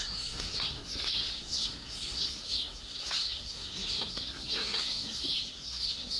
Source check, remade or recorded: remade